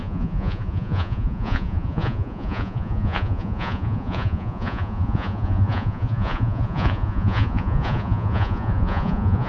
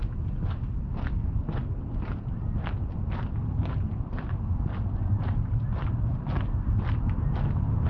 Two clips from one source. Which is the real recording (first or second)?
second